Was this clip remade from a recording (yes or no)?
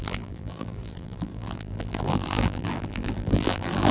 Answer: yes